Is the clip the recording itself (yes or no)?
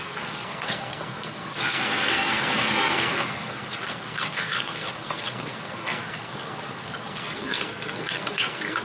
no